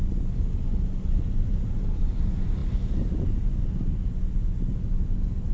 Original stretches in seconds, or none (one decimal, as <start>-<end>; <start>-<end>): 0.0-5.5

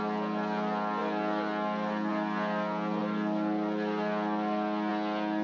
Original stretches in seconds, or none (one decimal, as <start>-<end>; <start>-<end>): 0.0-5.4